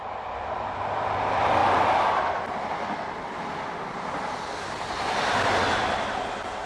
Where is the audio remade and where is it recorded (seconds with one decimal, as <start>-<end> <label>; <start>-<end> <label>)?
0.0-6.7 recorded